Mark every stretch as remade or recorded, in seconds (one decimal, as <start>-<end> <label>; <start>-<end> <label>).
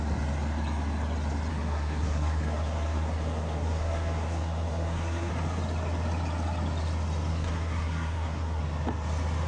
0.0-1.5 recorded; 1.5-5.3 remade; 5.3-7.3 recorded; 7.3-8.6 remade; 8.6-9.5 recorded